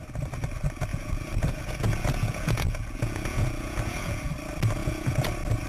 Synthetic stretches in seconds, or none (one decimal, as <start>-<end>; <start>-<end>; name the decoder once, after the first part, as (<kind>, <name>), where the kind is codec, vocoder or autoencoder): 0.9-4.3 (vocoder, Vocos); 4.8-5.3